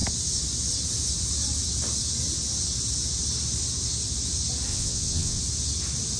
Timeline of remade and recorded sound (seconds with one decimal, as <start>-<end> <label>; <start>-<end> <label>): 0.0-4.7 recorded; 4.7-5.4 remade; 5.4-6.2 recorded